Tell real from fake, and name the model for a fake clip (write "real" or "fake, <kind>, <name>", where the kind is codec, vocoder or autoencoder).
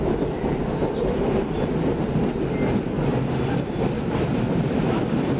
fake, vocoder, BigVGAN v2